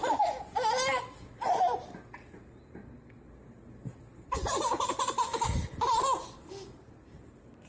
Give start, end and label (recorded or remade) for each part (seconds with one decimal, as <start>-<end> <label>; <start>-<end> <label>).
0.0-7.7 recorded